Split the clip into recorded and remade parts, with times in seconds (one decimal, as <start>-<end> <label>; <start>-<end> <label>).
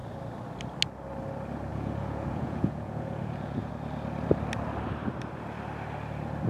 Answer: 0.0-1.7 recorded; 1.7-3.7 remade; 3.7-6.5 recorded